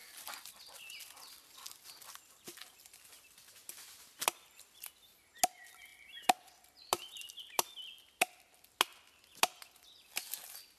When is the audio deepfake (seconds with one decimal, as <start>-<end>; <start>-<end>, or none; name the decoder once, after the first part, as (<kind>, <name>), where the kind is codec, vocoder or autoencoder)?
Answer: none